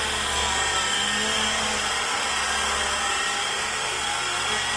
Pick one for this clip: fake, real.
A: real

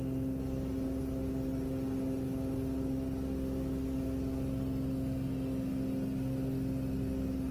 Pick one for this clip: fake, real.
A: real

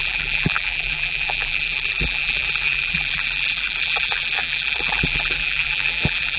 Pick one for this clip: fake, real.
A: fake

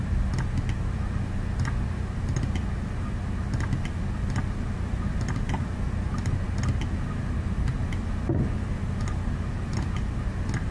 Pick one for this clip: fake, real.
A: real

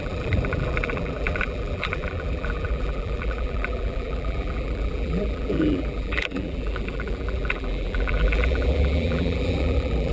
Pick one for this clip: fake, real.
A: fake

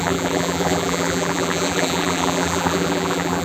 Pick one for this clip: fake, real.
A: fake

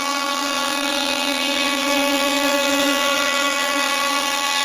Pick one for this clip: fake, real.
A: fake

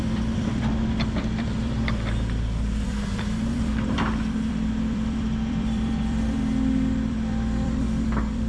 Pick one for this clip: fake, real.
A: fake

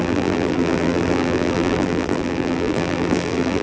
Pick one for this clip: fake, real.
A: fake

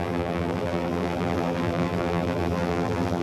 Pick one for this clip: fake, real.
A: fake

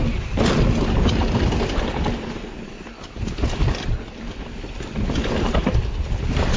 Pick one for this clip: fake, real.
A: real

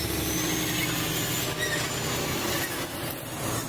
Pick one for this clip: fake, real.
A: real